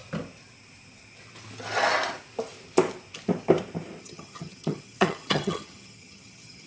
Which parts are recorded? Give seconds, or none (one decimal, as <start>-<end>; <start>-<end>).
0.0-4.0